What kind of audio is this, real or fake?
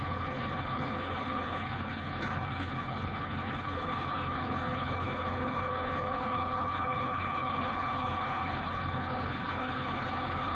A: fake